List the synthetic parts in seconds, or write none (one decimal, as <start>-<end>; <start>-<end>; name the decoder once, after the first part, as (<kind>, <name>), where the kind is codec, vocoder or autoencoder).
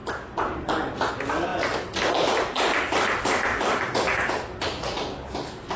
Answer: 3.5-4.6 (vocoder, BigVGAN v2)